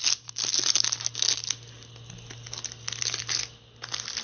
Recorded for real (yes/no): yes